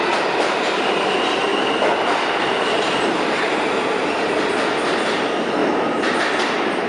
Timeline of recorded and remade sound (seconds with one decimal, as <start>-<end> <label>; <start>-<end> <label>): 0.0-1.5 recorded; 1.5-4.4 remade; 4.4-5.6 recorded; 5.6-6.2 remade; 6.2-6.9 recorded